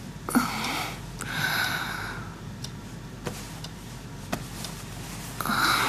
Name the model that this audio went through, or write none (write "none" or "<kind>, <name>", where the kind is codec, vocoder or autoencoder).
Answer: none